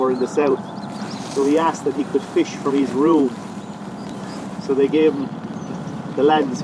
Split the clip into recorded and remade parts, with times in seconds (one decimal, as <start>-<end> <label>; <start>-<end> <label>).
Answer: 0.0-6.6 remade